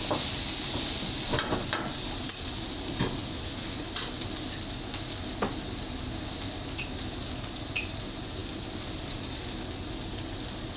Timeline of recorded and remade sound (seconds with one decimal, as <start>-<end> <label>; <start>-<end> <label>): 0.0-3.2 recorded; 3.2-3.8 remade; 3.8-8.4 recorded; 8.4-9.4 remade; 9.4-10.8 recorded